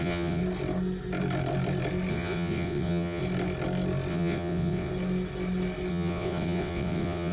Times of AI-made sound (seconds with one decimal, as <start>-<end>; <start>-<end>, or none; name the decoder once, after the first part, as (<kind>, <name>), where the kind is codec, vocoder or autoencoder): 0.0-0.4 (vocoder, WaveNeXt); 2.1-3.2; 4.1-4.9; 5.9-7.3